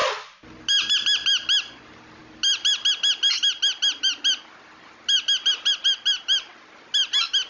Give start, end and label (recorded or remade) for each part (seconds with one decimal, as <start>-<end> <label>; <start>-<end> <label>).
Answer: 0.0-7.5 recorded